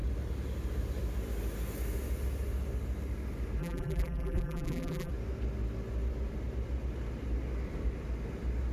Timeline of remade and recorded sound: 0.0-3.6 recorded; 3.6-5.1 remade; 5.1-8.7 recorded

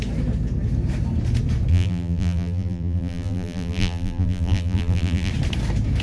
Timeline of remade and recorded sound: 0.0-1.7 recorded; 1.7-5.3 remade; 5.3-6.0 recorded

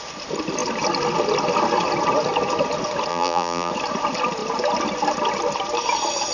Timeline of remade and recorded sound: 0.0-3.1 recorded; 3.1-3.7 remade; 3.7-6.3 recorded